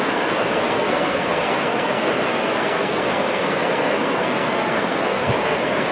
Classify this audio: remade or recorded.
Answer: remade